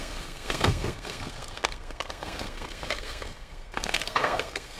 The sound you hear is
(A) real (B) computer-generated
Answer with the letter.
B